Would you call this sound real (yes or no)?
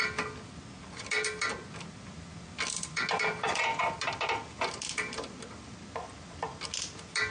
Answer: yes